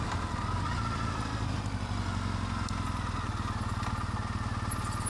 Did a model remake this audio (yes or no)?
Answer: no